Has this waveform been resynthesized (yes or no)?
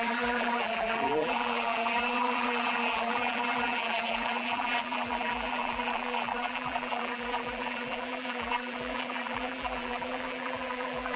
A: yes